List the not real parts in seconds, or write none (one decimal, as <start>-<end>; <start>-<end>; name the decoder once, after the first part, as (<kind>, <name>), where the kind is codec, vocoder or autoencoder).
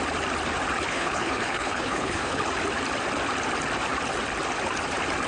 0.9-2.4 (codec, HILCodec)